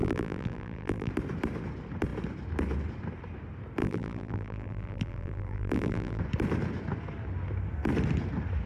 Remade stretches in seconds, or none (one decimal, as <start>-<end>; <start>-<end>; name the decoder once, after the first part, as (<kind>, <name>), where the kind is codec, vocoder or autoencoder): 0.0-1.1 (vocoder, BigVGAN v2); 3.8-6.2

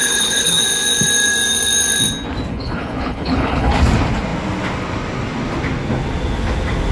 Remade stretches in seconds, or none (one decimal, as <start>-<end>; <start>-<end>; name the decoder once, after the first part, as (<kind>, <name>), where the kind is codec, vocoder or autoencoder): 0.0-0.6 (codec, HILCodec); 2.5-3.7